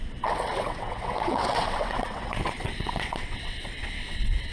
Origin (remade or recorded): remade